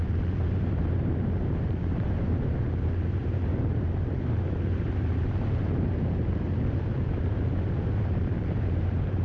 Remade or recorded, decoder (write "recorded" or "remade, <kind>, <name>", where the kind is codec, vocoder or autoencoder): remade, vocoder, BigVGAN v2